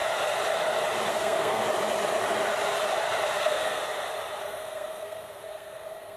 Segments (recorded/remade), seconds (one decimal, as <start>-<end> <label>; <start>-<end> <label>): 0.0-1.1 recorded; 1.1-1.6 remade; 1.6-3.4 recorded; 3.4-3.8 remade; 3.8-4.4 recorded; 4.4-6.2 remade